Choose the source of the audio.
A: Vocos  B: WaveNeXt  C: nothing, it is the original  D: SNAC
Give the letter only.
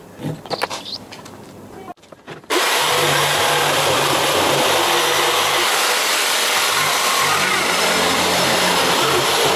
C